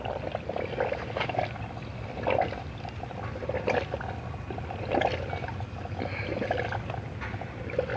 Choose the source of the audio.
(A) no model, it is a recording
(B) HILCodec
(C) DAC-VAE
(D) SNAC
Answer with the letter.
A